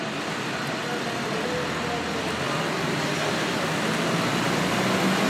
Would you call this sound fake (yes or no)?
no